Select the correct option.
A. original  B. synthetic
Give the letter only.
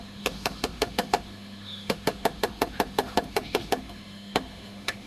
B